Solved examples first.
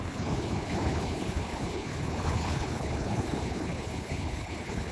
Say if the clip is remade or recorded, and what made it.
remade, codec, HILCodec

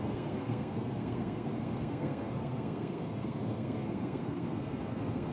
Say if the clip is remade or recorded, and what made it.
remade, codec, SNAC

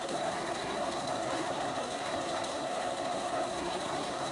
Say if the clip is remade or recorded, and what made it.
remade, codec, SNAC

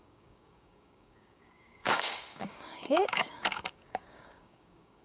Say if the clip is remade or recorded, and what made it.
remade, codec, DAC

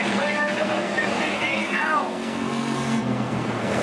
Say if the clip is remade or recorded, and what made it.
remade, codec, SNAC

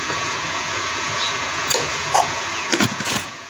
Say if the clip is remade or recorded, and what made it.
remade, vocoder, Vocos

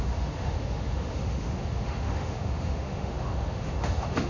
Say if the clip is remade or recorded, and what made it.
remade, autoencoder, DAC-VAE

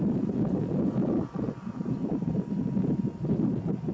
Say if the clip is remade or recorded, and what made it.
recorded